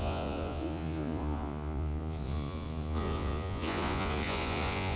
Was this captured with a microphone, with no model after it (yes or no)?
no